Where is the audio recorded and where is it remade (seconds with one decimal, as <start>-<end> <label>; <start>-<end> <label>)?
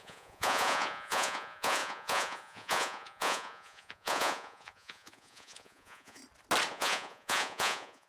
0.0-6.2 remade; 6.2-6.7 recorded; 6.7-8.1 remade